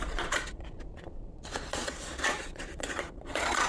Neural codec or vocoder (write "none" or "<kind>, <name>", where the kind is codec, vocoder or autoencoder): vocoder, Vocos